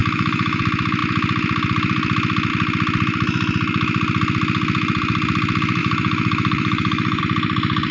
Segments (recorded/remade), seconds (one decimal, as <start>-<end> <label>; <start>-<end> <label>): 0.0-0.6 remade; 0.6-5.8 recorded; 5.8-7.2 remade; 7.2-7.9 recorded